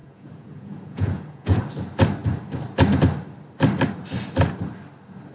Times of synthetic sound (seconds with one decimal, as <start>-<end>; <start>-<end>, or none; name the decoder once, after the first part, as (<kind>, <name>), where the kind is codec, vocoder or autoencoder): 0.0-1.6 (vocoder, Vocos)